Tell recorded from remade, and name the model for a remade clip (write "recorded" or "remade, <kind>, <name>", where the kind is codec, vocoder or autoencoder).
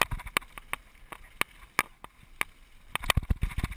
recorded